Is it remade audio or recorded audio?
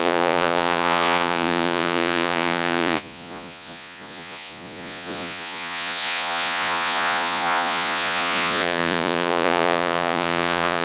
remade